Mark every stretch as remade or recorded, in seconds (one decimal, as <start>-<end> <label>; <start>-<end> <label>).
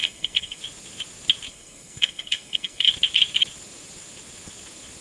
0.0-0.6 remade; 0.6-1.5 recorded; 1.5-2.9 remade; 2.9-5.0 recorded